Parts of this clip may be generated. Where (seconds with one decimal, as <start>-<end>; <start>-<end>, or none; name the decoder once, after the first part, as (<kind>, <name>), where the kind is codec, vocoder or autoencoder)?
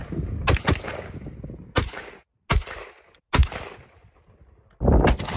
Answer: none